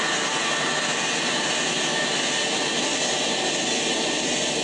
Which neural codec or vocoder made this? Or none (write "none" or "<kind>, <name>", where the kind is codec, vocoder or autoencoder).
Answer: none